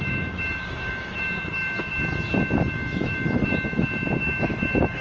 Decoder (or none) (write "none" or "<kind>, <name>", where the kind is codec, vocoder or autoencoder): autoencoder, DAC-VAE